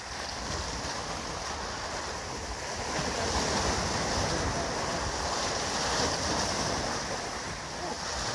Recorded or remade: recorded